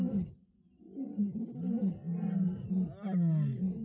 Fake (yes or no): no